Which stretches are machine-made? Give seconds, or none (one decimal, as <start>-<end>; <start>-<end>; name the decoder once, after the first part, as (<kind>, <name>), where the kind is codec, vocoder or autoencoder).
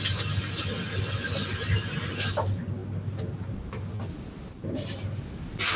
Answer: none